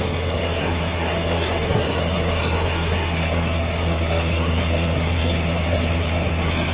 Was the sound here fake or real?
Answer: fake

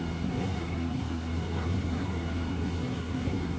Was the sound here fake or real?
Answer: fake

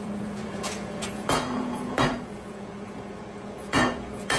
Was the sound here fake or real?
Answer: fake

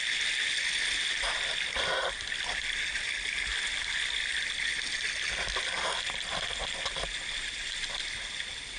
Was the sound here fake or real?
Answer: real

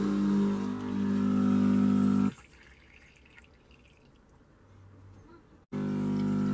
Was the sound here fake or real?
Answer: real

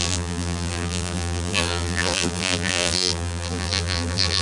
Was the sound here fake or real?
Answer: fake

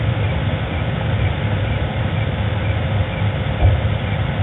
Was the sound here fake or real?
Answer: real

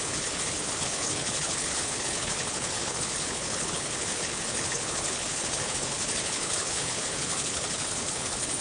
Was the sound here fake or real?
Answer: fake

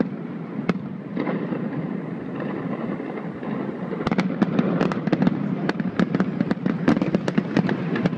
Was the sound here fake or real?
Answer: real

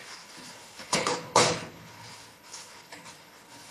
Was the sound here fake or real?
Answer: fake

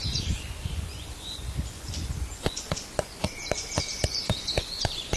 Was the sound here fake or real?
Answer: fake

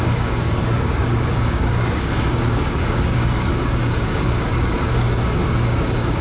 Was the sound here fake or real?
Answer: fake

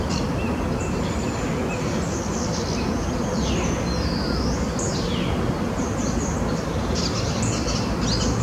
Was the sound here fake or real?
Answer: real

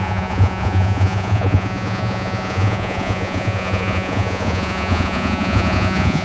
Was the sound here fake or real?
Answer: fake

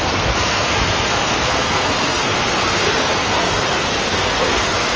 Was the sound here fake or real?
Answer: fake